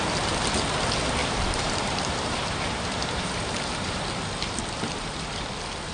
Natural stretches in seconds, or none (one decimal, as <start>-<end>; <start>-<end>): 0.0-1.2; 4.0-5.9